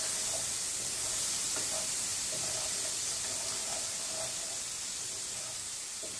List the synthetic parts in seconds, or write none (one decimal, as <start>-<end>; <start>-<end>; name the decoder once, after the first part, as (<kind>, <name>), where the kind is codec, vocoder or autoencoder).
0.0-2.1 (vocoder, BigVGAN v2); 5.4-6.2